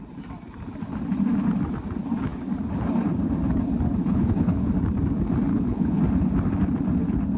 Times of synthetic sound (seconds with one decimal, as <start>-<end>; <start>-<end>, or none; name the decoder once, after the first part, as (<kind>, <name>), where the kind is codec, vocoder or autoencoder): 4.1-4.7 (codec, HILCodec); 5.5-6.0